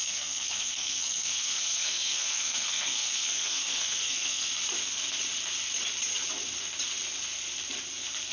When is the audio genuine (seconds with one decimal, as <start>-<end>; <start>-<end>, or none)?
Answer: 4.5-8.3

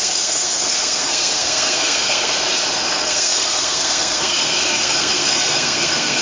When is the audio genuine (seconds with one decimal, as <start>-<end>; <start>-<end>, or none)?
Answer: 2.3-2.9

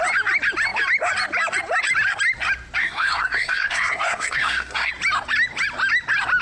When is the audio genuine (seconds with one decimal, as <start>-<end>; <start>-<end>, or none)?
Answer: 0.0-2.8; 4.9-6.4